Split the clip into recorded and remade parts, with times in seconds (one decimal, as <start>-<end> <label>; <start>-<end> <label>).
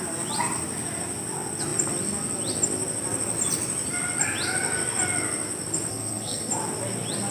0.0-5.9 recorded; 5.9-6.5 remade; 6.5-7.3 recorded